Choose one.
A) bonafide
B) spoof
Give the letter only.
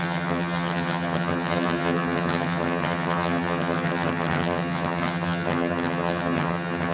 B